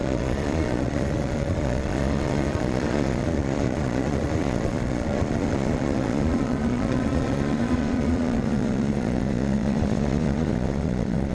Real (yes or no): no